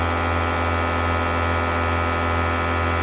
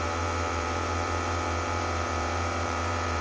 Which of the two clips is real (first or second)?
first